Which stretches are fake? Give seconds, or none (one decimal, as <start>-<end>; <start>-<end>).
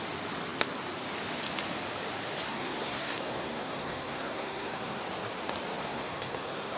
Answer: 2.5-5.0; 5.8-6.8